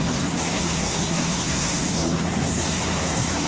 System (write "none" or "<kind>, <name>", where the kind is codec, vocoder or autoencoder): codec, SNAC